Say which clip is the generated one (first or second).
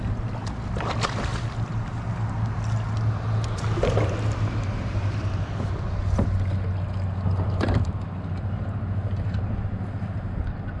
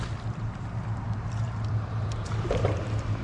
second